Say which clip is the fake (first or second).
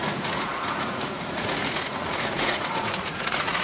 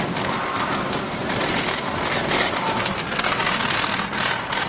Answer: first